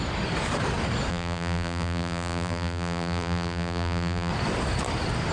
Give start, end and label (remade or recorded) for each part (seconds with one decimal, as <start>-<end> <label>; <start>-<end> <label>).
0.0-1.1 recorded; 1.1-4.3 remade; 4.3-5.3 recorded